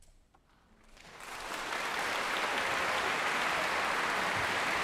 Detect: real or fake real